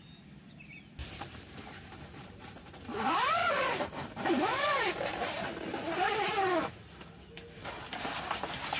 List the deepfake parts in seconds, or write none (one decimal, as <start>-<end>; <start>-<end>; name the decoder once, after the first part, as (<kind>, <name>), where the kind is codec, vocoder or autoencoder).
1.0-2.7 (vocoder, BigVGAN v2); 3.4-6.1